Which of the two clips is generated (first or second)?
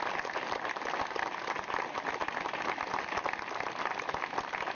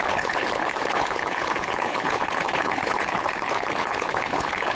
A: second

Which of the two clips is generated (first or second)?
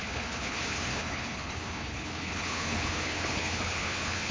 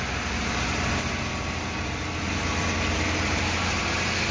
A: first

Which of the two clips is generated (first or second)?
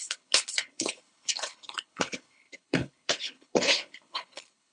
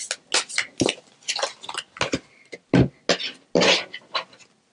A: first